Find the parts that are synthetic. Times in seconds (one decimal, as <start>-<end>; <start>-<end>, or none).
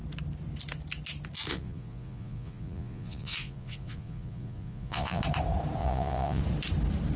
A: 1.5-5.2; 5.8-6.4